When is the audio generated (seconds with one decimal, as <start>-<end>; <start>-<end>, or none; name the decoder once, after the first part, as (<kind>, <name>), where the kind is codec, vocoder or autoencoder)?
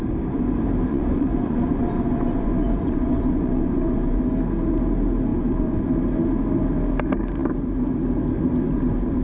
0.9-4.2 (vocoder, Vocos); 5.3-5.8